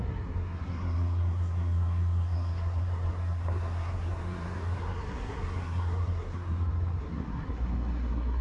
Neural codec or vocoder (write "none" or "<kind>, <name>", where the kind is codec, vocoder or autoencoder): codec, SNAC